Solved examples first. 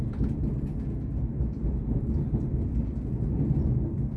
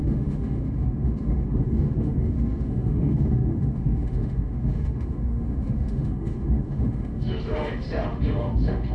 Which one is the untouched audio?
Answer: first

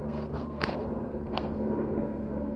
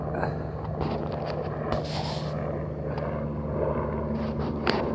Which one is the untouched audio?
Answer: second